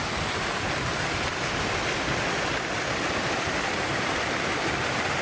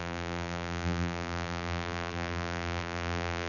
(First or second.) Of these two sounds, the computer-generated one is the second